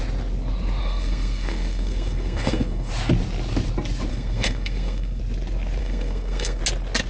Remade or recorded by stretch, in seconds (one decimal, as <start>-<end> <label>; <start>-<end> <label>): 0.0-0.8 recorded; 0.8-2.9 remade; 2.9-4.1 recorded; 4.1-5.2 remade; 5.2-5.8 recorded; 5.8-6.6 remade; 6.6-7.1 recorded